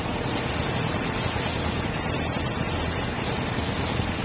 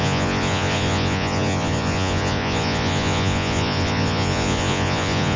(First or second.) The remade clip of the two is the second